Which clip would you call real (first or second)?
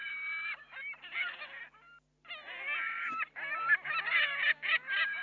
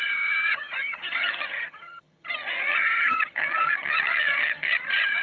first